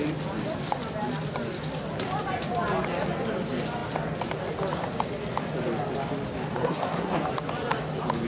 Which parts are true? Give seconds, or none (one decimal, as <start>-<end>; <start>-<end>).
0.0-6.6; 7.2-8.3